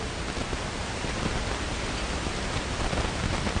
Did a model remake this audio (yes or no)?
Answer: no